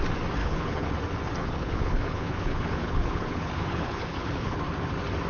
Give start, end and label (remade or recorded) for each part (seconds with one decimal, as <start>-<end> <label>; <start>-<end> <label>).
0.0-0.4 recorded; 0.4-0.9 remade; 0.9-1.4 recorded; 1.4-4.6 remade; 4.6-5.3 recorded